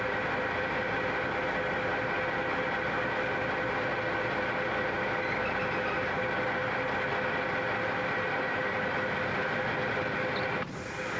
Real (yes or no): yes